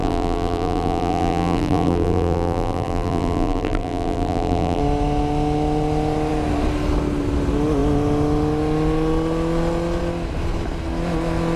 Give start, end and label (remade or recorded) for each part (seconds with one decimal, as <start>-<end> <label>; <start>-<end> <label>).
0.0-4.8 remade; 4.8-11.6 recorded